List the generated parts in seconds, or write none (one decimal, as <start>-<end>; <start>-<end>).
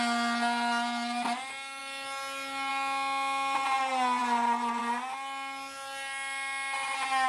none